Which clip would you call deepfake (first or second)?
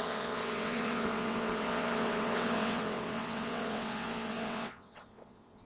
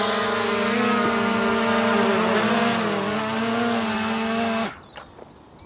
first